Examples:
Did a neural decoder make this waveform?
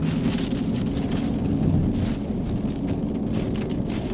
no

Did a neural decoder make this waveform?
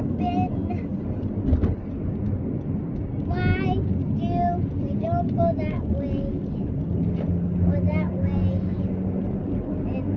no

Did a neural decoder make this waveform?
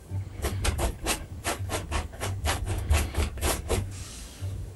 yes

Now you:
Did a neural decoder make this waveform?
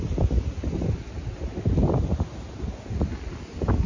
no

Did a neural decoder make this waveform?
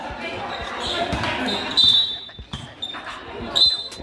no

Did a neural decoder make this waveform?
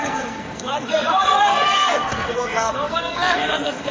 yes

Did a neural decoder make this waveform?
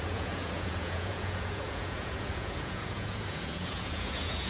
yes